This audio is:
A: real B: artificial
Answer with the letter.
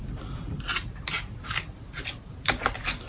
A